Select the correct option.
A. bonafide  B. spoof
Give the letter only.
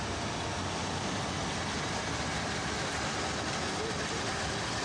A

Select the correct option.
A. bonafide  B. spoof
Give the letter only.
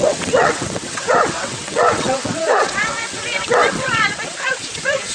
B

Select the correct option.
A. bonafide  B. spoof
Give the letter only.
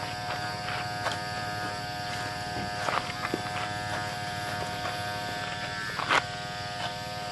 A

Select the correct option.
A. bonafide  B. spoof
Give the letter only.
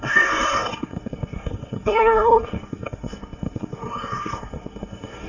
B